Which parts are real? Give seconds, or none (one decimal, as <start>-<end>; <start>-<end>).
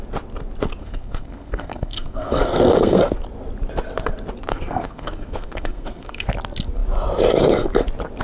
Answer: 0.0-0.8; 3.0-4.5; 6.3-8.2